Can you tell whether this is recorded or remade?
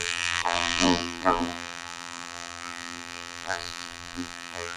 remade